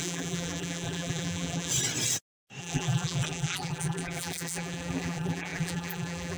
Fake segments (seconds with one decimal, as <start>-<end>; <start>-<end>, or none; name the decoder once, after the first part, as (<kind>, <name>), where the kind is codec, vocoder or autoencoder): 0.0-1.7 (vocoder, BigVGAN v2); 2.6-6.4